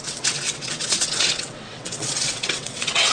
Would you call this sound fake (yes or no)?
yes